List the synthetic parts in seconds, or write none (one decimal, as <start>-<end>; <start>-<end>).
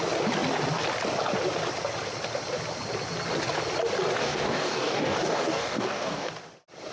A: 4.2-6.3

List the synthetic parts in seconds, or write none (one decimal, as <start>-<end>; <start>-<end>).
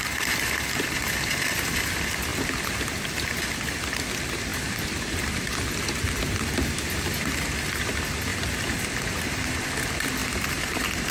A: 4.5-5.6; 10.2-11.1